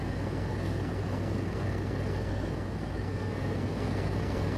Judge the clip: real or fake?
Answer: fake